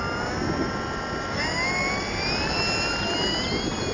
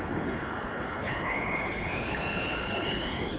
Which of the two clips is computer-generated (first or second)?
second